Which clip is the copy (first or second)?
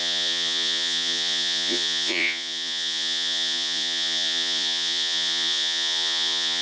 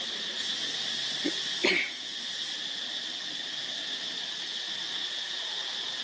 first